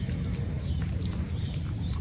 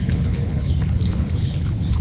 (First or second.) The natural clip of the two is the first